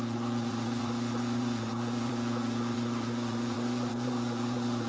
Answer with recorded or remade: remade